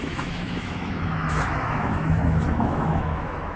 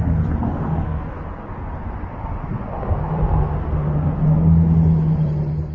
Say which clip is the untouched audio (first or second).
second